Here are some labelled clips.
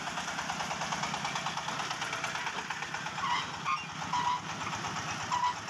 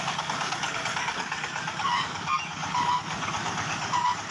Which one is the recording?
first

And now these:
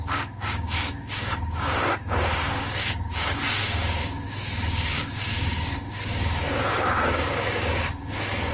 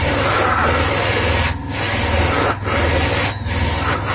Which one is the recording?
second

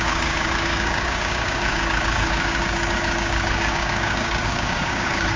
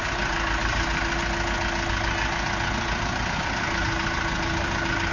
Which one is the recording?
second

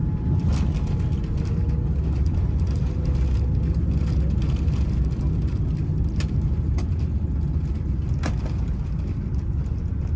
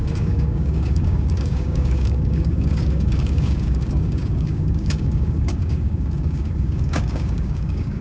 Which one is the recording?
first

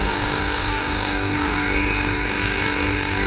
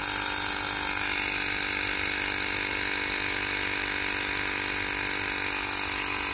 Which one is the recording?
second